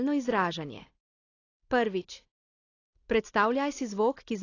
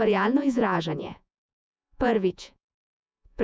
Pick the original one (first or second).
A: first